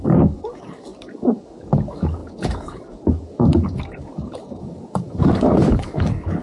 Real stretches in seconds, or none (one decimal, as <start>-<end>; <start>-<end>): none